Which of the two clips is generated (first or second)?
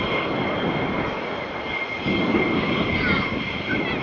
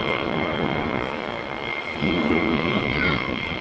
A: second